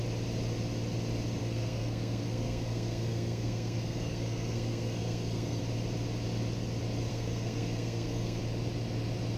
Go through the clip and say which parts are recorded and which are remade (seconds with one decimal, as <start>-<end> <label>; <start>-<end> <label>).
0.0-1.4 recorded; 1.4-5.6 remade; 5.6-7.1 recorded; 7.1-8.4 remade; 8.4-9.4 recorded